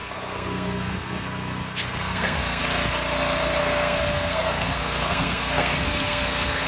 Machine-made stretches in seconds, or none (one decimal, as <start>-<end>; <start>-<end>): 0.0-2.6; 3.6-6.7